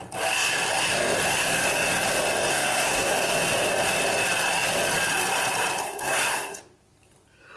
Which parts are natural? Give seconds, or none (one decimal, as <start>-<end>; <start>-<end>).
0.0-2.5; 3.1-5.8; 6.6-7.6